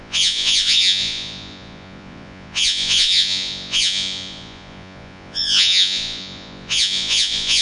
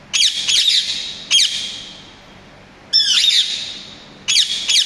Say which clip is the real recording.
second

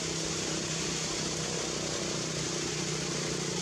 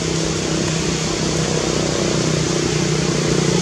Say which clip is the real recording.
second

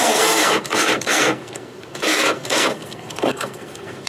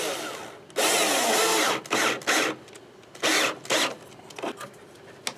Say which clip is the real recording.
second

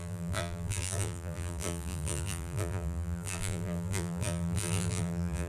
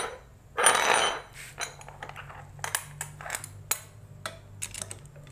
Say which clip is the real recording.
second